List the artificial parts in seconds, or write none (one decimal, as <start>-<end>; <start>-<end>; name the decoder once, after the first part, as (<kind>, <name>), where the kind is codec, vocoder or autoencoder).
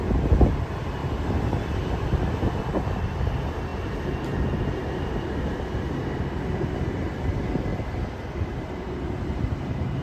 1.0-2.6 (vocoder, BigVGAN v2)